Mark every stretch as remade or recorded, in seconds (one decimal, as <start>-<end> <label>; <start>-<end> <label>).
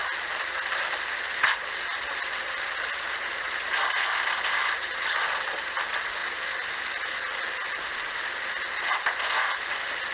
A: 0.0-10.1 recorded